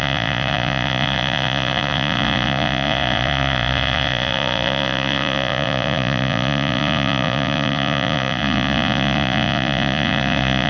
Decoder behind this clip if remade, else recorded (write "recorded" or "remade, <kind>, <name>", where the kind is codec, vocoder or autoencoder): remade, vocoder, Vocos